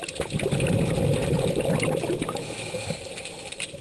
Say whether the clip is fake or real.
real